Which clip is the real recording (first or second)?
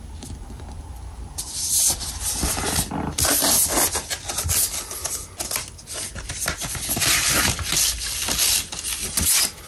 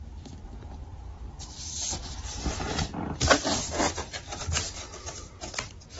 first